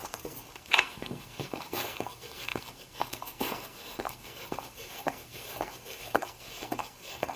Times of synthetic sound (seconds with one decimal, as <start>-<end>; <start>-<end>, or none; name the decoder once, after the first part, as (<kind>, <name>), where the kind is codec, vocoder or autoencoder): 0.0-7.4 (codec, SNAC)

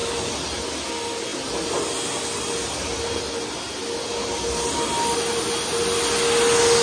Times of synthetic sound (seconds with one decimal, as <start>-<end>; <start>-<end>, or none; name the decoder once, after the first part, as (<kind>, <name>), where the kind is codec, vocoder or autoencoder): none

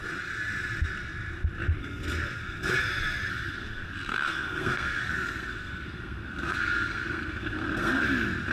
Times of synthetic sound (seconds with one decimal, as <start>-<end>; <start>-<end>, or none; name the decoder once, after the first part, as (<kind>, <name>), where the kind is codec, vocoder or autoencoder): 1.8-2.7 (codec, SNAC); 3.3-8.0

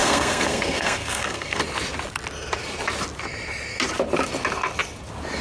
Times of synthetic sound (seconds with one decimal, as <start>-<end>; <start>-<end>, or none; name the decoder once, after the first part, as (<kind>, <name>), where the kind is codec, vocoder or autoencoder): 0.0-1.6 (codec, SNAC)

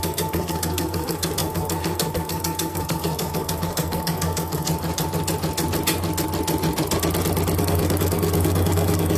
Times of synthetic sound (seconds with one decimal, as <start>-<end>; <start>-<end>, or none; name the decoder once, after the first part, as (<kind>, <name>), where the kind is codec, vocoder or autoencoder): 0.0-4.7 (codec, SNAC); 7.6-9.2

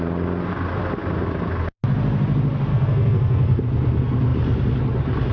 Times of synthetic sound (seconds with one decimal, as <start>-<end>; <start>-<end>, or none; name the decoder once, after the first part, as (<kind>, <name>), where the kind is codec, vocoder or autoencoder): 2.7-3.6 (codec, SNAC)

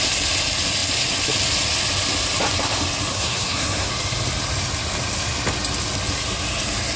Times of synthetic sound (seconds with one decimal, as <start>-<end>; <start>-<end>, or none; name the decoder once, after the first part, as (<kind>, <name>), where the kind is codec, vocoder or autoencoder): 3.1-3.9 (codec, SNAC)